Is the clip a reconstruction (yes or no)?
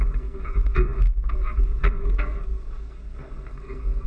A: yes